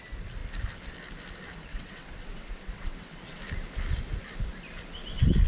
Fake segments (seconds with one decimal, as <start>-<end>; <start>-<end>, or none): 1.7-3.4

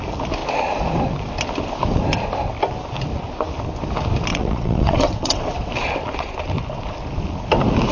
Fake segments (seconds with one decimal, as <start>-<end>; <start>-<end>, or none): 4.3-5.7

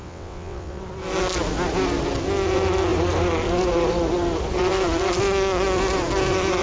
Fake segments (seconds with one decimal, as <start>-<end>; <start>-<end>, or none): 0.0-0.8

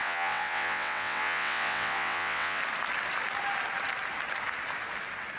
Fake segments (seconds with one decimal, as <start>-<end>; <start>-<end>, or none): 0.0-2.6

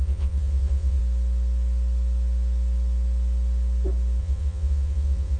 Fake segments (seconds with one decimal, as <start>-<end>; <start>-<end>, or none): 0.0-1.0; 4.2-5.4

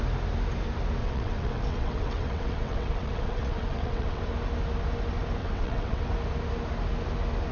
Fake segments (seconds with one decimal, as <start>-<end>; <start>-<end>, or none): 1.0-4.2; 5.4-6.1